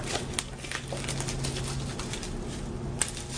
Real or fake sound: real